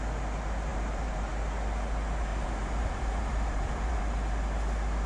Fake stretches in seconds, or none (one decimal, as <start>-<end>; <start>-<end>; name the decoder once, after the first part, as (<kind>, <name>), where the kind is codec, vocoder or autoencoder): 0.7-1.3 (vocoder, BigVGAN v2); 2.3-4.0